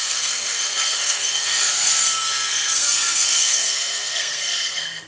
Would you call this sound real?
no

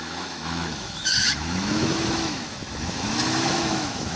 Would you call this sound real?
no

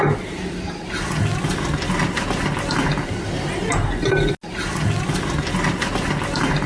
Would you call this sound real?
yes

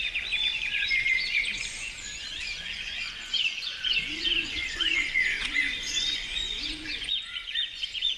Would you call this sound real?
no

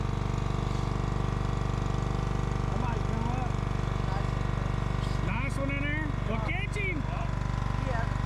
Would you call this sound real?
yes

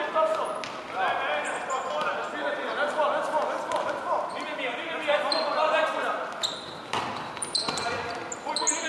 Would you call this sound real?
yes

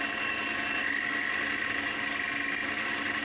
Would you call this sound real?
yes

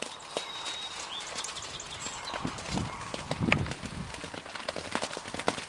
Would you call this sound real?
yes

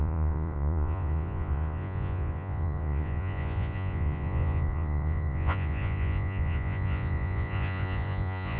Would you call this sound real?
no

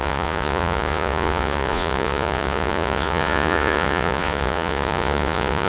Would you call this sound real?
no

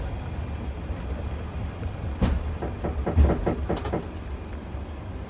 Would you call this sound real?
yes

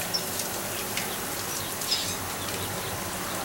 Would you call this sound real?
yes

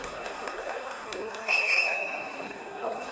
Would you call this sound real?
no